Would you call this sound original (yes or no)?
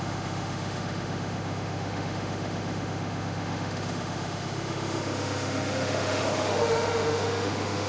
no